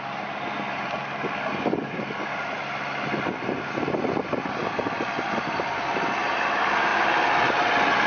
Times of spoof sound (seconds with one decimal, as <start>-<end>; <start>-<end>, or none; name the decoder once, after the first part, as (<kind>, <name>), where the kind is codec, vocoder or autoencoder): none